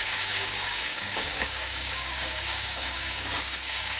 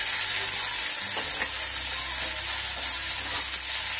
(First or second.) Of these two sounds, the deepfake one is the first